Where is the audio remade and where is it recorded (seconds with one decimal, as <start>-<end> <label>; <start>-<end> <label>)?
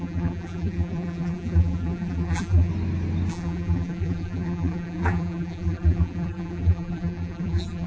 0.0-2.7 remade; 2.7-3.3 recorded; 3.3-7.9 remade